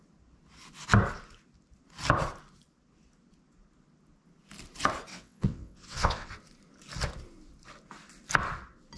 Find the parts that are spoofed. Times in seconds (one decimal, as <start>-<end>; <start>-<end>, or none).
5.1-6.3